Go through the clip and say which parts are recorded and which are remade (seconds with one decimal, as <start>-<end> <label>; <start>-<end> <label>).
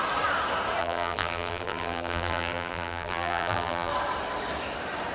0.0-0.8 recorded; 0.8-3.9 remade; 3.9-5.1 recorded